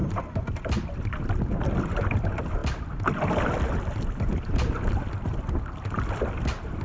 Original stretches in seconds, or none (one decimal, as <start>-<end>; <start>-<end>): 0.6-6.8